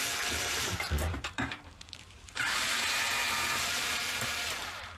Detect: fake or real fake